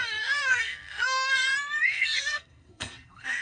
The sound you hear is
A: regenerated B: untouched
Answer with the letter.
A